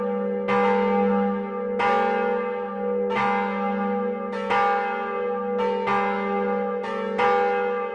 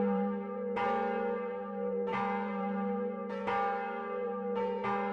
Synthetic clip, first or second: second